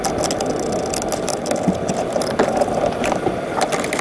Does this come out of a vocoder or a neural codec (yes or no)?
no